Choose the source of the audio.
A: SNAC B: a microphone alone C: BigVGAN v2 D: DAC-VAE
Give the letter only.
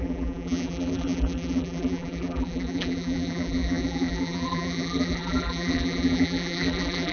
C